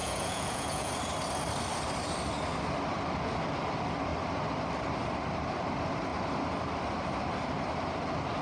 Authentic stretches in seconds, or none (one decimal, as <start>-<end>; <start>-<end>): 0.9-8.4